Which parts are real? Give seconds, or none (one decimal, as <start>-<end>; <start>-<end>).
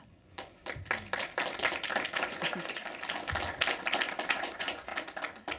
0.6-2.2; 2.8-4.3; 4.9-5.6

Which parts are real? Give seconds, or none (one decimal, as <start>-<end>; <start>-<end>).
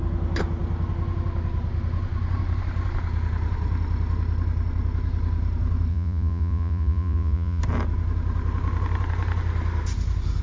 0.0-5.9; 7.6-10.4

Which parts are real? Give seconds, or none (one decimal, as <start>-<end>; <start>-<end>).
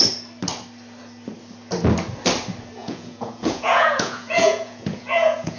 0.0-2.8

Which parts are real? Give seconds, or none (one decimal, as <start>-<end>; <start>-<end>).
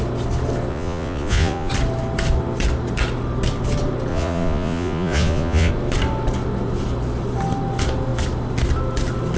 0.0-0.7; 1.7-4.1; 5.7-9.4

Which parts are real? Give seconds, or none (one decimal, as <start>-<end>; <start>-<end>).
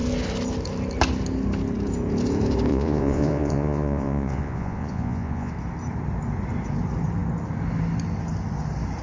0.0-2.7; 5.5-9.0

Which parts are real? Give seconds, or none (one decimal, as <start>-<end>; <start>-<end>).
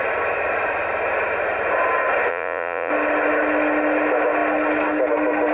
0.0-2.3; 2.9-5.5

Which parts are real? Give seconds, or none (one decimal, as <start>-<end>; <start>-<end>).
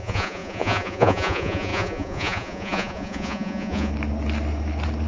3.9-5.1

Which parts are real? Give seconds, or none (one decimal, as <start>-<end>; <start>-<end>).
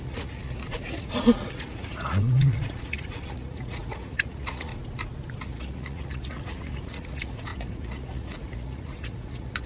4.7-5.4